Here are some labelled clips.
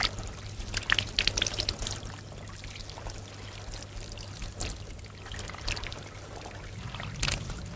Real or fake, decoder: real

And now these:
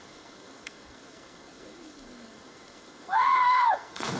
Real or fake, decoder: fake, codec, SNAC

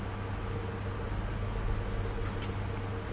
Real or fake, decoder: real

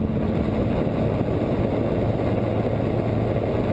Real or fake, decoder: real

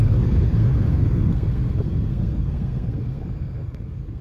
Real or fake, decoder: fake, codec, SNAC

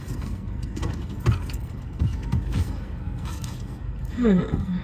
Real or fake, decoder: fake, codec, SNAC